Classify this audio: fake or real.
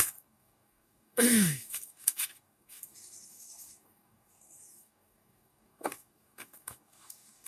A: fake